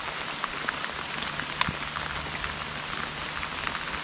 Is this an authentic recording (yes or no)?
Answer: yes